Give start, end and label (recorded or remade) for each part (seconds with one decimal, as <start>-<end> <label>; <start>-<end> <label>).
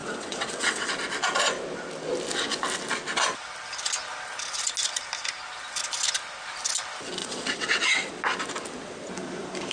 0.0-0.9 remade; 0.9-7.2 recorded; 7.2-8.1 remade; 8.1-9.7 recorded